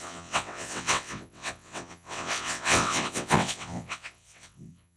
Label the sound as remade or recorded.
remade